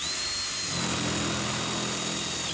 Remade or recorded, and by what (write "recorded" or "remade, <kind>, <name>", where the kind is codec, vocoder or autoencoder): recorded